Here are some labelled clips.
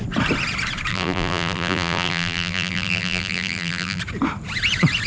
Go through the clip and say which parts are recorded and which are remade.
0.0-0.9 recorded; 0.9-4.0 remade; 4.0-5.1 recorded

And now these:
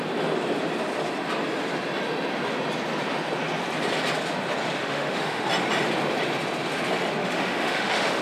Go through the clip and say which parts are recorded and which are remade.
0.0-4.8 recorded; 4.8-5.4 remade; 5.4-7.2 recorded; 7.2-8.2 remade

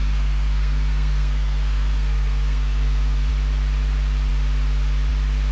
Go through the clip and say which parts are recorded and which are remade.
0.0-3.3 remade; 3.3-5.5 recorded

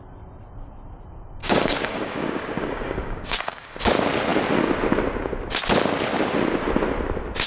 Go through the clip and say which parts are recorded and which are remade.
0.0-1.4 recorded; 1.4-3.9 remade; 3.9-7.5 recorded